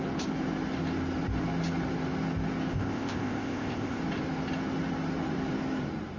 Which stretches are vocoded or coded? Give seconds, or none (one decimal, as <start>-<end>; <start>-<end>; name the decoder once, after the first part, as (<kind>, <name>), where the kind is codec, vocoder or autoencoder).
2.7-4.0 (codec, ZipCodec)